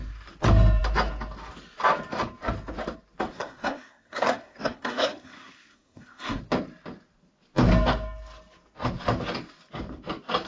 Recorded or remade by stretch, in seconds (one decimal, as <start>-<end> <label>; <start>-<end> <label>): 0.0-3.3 recorded; 3.3-6.4 remade; 6.4-10.5 recorded